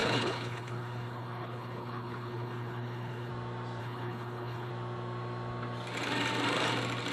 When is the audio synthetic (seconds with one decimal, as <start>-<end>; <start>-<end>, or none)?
0.0-3.3; 3.8-4.7